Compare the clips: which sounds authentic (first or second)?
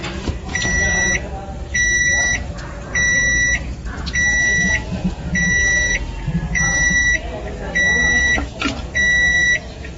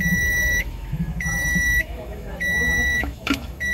first